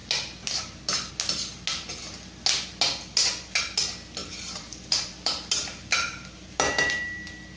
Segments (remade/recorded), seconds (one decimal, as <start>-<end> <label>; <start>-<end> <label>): 0.0-4.2 recorded; 4.2-5.3 remade; 5.3-7.6 recorded